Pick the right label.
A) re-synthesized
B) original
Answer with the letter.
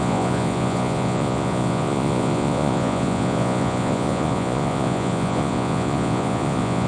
A